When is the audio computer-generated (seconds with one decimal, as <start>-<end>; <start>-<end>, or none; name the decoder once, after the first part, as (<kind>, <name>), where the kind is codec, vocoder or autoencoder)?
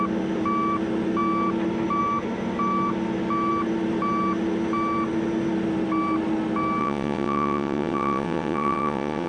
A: 6.8-9.3 (vocoder, WaveNeXt)